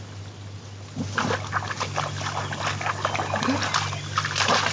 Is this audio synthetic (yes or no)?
no